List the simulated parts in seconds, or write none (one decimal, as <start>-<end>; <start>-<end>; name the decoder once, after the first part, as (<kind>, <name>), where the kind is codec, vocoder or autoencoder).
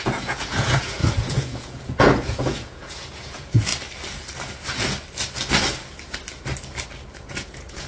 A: 0.0-3.7 (vocoder, Vocos); 7.2-7.9